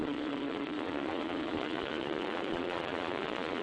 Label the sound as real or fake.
fake